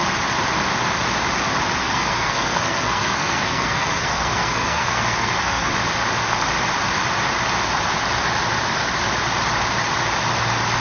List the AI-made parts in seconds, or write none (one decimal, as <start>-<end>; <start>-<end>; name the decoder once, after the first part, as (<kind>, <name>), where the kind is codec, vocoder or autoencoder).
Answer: 1.8-5.7 (codec, SNAC)